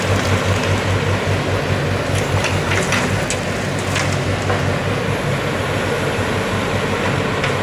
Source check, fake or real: real